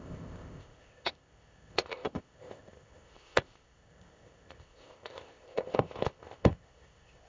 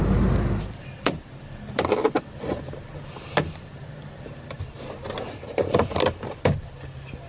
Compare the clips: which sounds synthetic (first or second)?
first